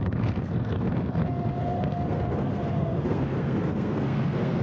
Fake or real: fake